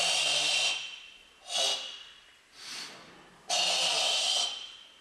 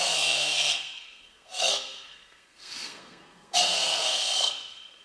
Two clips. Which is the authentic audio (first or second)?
first